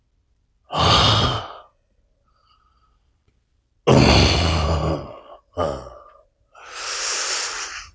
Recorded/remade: recorded